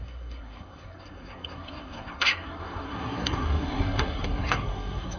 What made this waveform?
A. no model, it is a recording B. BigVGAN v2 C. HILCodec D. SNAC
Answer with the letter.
D